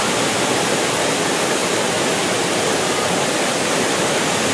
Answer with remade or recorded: recorded